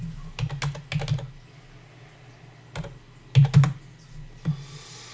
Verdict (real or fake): real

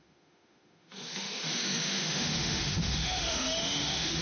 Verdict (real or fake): fake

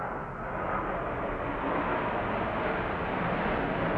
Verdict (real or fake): real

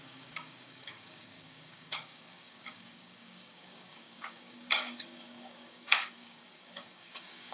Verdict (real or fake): fake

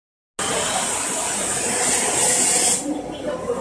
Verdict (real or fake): real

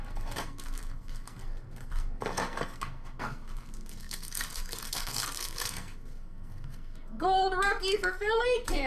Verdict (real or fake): fake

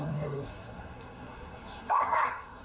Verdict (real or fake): fake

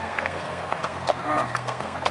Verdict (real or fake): fake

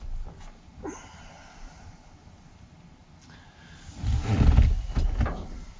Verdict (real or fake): real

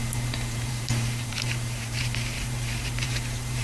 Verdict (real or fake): fake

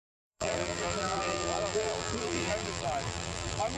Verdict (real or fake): fake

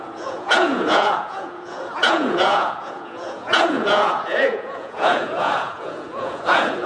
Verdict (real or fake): fake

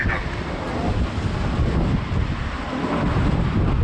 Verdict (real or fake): real